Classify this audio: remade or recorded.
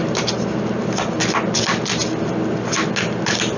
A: recorded